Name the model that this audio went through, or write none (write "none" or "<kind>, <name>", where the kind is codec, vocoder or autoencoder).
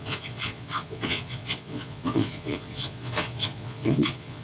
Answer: vocoder, Vocos